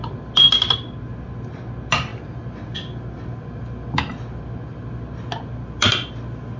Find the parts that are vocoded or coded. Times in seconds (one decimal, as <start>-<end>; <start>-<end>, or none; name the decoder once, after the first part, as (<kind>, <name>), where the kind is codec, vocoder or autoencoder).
none